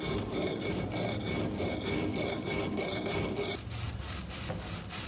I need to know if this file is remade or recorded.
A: recorded